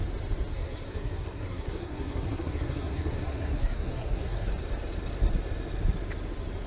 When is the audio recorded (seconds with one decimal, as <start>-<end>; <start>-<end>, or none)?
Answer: 0.0-0.5; 4.5-6.7